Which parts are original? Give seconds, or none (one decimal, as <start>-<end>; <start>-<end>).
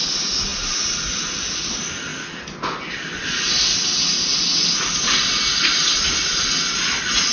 0.0-7.3